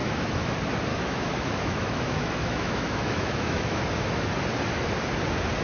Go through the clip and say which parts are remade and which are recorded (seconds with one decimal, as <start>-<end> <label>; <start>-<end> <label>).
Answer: 0.0-0.5 remade; 0.5-0.9 recorded; 0.9-4.3 remade; 4.3-5.6 recorded